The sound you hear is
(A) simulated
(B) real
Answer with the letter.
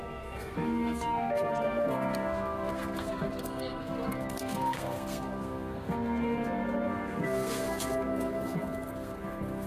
A